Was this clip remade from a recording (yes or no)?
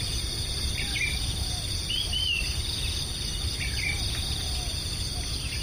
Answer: no